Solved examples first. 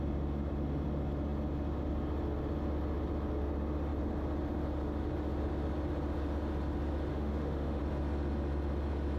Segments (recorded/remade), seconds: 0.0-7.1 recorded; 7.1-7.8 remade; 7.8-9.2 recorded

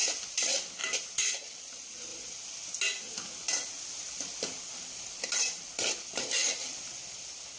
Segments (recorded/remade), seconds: 0.0-7.6 recorded

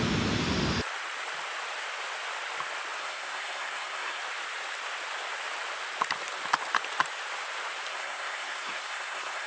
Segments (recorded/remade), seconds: 0.0-3.0 recorded; 3.0-4.2 remade; 4.2-7.9 recorded; 7.9-9.5 remade

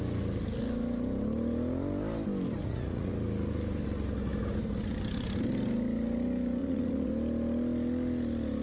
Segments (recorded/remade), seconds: 0.0-2.6 recorded; 2.6-3.1 remade; 3.1-6.6 recorded; 6.6-7.1 remade; 7.1-8.6 recorded

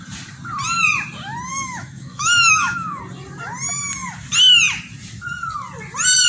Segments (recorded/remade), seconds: 0.0-1.5 recorded; 1.5-3.0 remade; 3.0-6.3 recorded

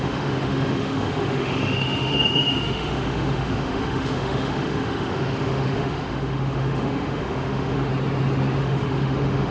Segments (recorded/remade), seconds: 0.0-7.9 remade; 7.9-8.6 recorded; 8.6-9.5 remade